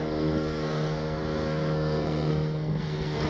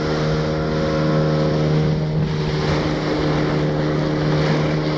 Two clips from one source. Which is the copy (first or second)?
first